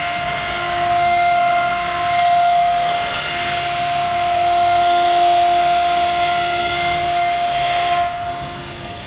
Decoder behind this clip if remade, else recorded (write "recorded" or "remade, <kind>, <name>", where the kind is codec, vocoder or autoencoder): remade, codec, SNAC